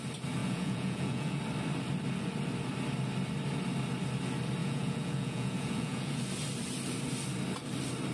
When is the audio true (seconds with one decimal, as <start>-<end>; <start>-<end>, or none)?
0.0-0.4; 1.4-4.6; 6.2-8.1